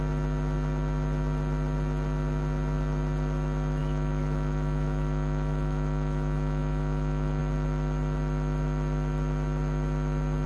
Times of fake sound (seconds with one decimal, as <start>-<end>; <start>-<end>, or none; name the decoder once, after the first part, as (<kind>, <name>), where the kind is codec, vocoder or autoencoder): 3.8-7.4 (autoencoder, DAC-VAE)